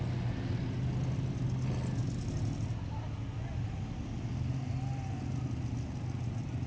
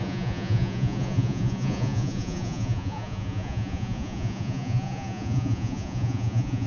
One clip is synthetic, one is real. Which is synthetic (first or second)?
second